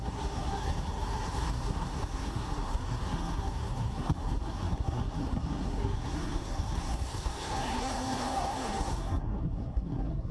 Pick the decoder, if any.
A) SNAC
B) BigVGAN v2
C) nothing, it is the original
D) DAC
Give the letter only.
A